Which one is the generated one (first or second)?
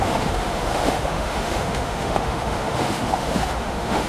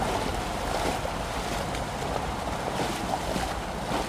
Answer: first